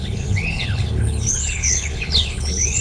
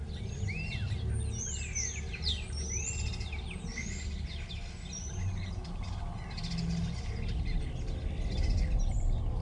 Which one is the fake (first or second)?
first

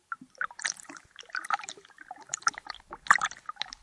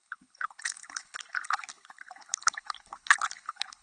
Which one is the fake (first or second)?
second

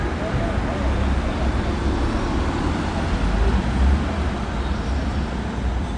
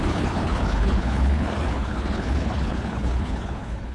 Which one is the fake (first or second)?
second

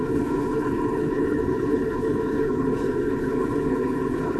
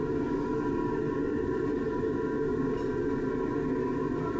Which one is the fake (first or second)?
first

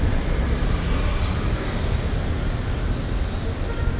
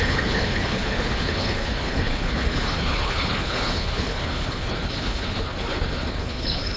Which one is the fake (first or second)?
second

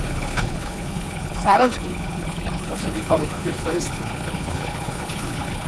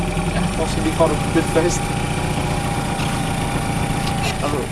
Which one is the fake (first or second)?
first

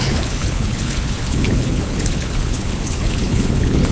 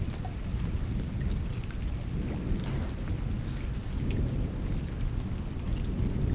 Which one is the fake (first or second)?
first